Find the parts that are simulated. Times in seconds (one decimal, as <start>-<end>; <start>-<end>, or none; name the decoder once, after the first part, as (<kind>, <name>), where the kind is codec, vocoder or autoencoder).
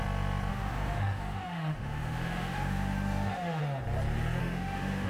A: 0.5-3.6 (autoencoder, DAC-VAE); 4.4-5.1